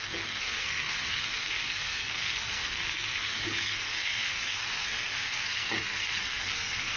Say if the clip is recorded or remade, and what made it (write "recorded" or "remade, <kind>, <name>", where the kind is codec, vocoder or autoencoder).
remade, codec, SNAC